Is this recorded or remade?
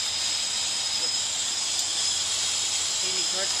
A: recorded